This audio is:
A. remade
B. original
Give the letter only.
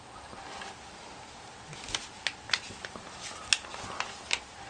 B